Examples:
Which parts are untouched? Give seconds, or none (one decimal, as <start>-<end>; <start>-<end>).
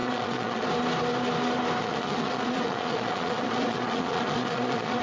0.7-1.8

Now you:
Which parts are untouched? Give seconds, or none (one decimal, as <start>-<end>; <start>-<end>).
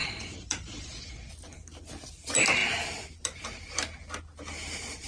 1.3-5.1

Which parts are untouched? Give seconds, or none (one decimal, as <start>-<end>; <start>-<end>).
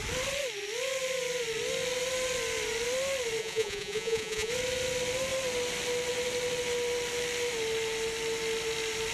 0.0-3.4; 4.5-9.1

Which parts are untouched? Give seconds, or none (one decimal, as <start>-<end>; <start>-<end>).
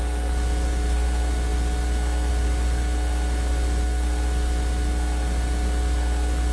0.0-6.5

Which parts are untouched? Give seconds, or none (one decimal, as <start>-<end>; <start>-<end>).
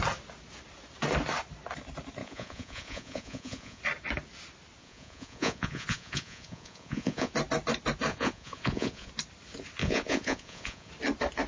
0.0-2.2; 3.8-4.8; 7.3-8.1; 9.1-9.8; 10.9-11.5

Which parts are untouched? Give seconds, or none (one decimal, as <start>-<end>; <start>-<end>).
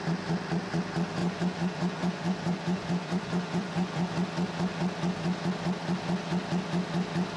0.0-1.2; 4.1-7.4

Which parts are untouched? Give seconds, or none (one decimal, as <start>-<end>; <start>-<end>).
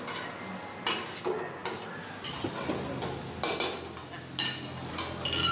0.0-5.5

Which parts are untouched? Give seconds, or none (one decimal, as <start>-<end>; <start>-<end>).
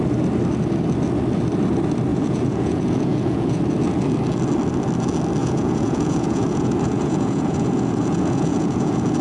0.0-2.1; 3.6-5.4